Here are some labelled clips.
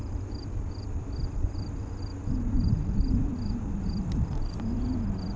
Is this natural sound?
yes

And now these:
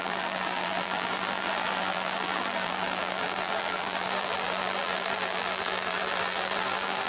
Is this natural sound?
no